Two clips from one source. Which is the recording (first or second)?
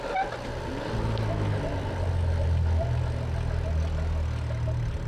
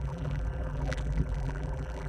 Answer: first